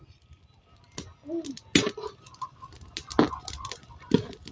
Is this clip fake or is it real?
real